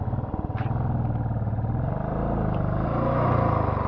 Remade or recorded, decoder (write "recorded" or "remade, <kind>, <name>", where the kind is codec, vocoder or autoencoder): recorded